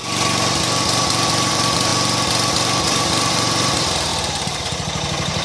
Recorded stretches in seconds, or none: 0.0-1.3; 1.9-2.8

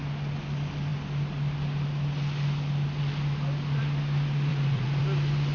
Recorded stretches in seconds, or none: 0.0-4.5; 5.0-5.5

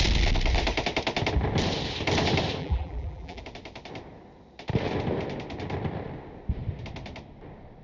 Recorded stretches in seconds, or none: 0.0-2.6; 3.4-7.8

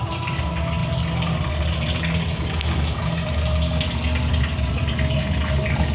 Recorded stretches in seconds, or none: 0.0-5.9